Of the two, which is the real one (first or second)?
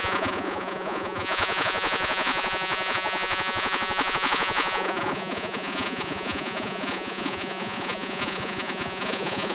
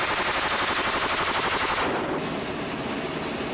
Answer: second